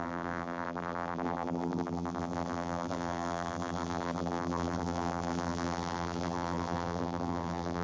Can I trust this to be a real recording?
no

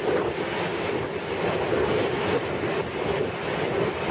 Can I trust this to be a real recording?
yes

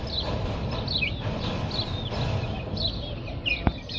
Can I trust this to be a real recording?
yes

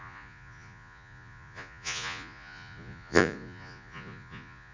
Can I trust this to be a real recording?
no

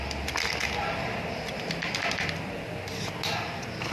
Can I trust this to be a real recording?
yes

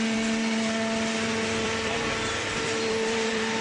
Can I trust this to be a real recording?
no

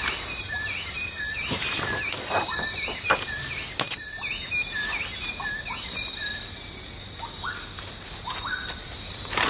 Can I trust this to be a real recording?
yes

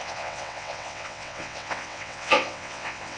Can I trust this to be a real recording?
no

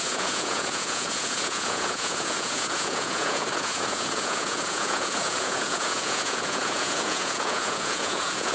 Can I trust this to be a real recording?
no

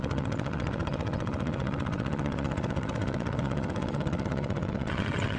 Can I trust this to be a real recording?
no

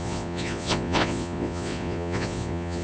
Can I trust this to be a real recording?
no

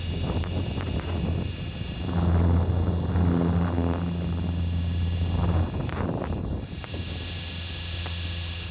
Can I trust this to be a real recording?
yes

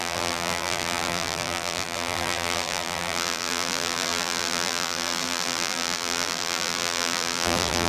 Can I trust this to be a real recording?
no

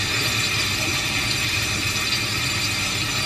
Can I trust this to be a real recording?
yes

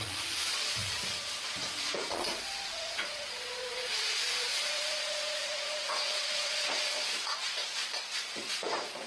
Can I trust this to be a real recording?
no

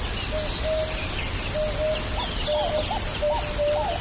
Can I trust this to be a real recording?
yes